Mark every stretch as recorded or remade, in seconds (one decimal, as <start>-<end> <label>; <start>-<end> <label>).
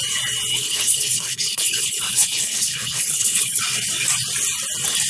0.0-0.5 recorded; 0.5-3.6 remade; 3.6-5.1 recorded